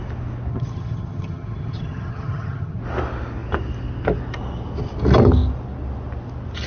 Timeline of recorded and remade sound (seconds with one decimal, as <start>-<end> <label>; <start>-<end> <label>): 0.0-0.5 recorded; 0.5-2.8 remade; 2.8-6.7 recorded